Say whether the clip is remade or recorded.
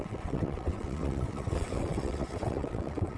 remade